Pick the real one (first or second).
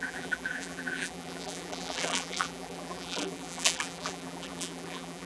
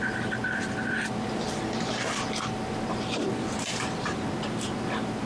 second